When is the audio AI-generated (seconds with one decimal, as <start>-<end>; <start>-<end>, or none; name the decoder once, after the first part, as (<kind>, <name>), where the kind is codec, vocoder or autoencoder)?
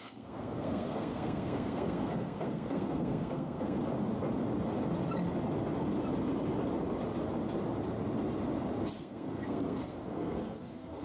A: 0.0-3.8 (codec, SNAC); 9.0-11.0